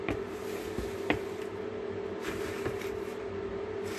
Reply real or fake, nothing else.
real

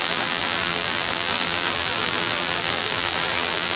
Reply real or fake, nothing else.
fake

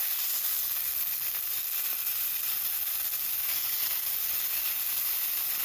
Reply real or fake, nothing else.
real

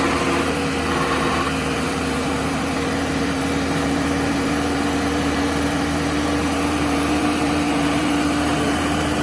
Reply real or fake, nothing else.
fake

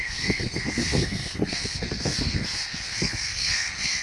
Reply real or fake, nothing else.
fake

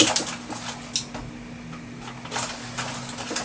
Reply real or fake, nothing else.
real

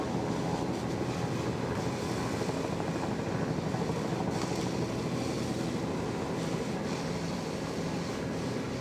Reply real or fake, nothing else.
real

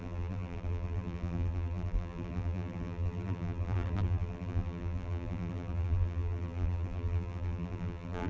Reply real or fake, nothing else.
fake